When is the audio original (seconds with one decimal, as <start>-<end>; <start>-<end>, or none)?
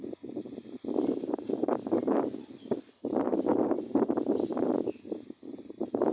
0.0-6.1